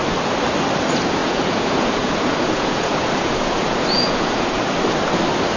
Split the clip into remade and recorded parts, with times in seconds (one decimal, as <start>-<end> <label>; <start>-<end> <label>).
0.0-1.2 recorded; 1.2-4.6 remade; 4.6-5.6 recorded